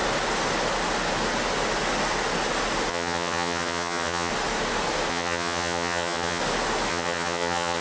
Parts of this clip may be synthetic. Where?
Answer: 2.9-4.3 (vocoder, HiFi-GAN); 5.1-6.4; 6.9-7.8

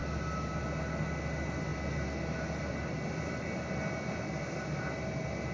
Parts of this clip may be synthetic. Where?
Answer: none

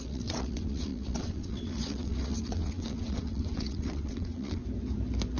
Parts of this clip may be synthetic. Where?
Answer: 0.0-4.6 (vocoder, WaveNeXt)